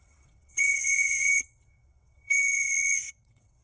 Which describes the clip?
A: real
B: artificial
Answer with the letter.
B